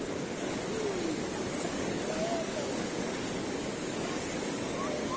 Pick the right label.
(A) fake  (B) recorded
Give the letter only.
A